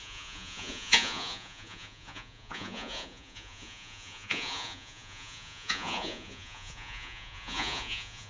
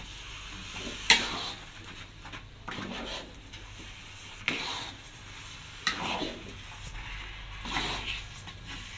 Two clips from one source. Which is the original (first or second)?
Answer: second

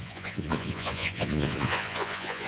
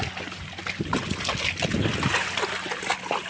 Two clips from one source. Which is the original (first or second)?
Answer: second